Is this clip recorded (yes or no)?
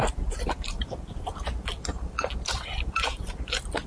yes